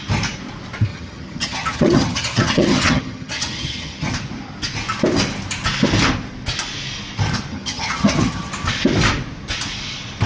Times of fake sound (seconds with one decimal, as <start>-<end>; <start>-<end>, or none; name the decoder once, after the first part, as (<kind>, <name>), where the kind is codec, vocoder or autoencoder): 0.9-4.1 (vocoder, HiFi-GAN); 7.5-8.5